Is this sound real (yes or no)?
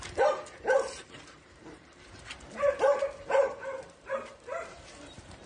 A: no